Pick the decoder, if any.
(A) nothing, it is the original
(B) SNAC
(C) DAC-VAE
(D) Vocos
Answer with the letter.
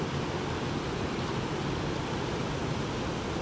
A